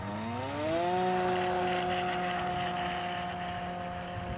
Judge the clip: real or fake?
real